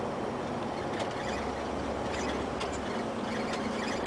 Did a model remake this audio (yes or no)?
no